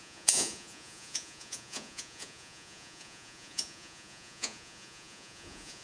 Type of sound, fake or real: fake